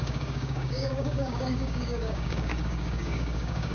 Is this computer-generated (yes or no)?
yes